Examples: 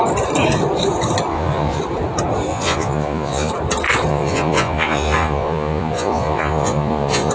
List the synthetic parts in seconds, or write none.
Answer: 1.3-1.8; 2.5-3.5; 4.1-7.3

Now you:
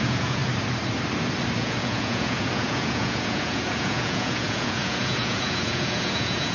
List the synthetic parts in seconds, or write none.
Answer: 0.0-0.4; 1.6-6.5

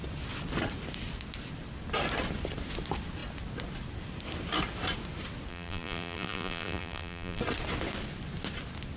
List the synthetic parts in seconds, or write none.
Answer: 5.5-7.4

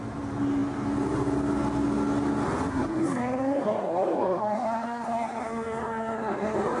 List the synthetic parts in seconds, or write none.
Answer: 2.7-6.8